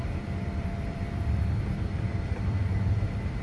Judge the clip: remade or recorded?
remade